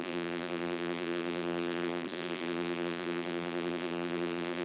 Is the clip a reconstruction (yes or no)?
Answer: yes